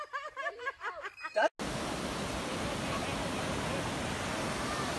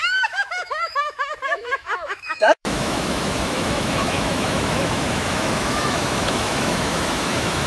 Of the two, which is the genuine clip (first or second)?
first